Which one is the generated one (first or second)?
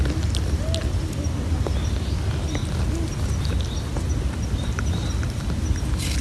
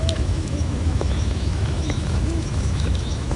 second